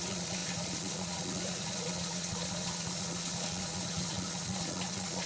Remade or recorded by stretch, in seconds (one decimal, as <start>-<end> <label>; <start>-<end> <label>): 0.0-5.3 remade